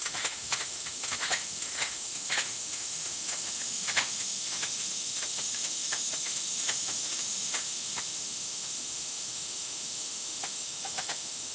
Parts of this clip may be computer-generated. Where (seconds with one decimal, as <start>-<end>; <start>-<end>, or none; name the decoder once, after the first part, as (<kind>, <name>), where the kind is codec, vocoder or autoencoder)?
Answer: 0.0-11.5 (autoencoder, DAC-VAE)